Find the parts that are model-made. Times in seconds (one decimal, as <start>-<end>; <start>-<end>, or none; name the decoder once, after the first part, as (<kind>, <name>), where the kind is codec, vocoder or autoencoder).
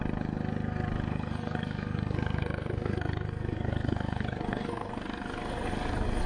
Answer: 1.1-4.9 (codec, SNAC)